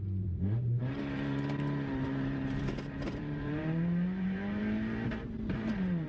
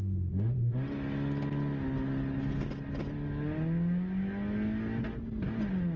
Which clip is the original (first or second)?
second